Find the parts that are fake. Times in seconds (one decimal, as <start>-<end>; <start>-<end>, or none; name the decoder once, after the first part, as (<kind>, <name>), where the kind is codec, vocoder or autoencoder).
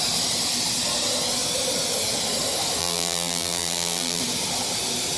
2.8-4.2 (vocoder, BigVGAN v2)